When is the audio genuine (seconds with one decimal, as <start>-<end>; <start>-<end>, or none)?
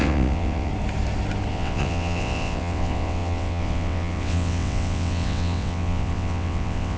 0.7-1.5